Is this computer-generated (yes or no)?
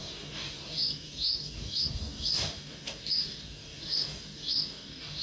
yes